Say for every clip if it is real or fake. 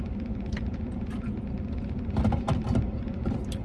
real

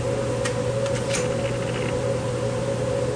real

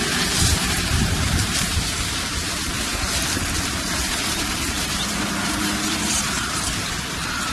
fake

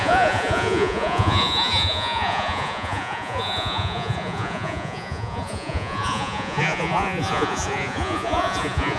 fake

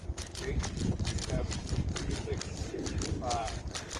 real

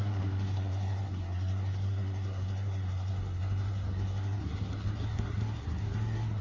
fake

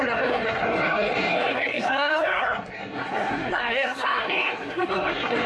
fake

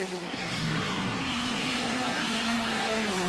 fake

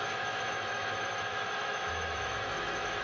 fake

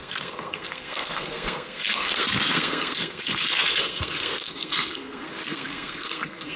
fake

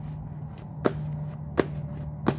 real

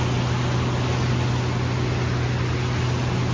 real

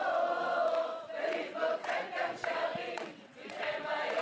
fake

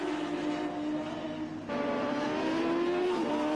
real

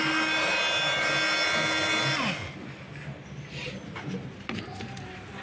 real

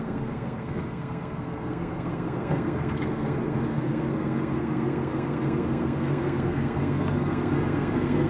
fake